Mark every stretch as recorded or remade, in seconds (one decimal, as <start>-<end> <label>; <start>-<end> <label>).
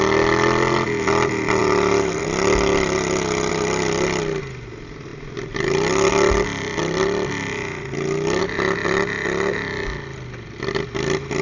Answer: 0.0-11.4 recorded